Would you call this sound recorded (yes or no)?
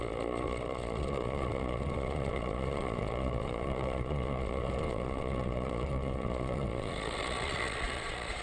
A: no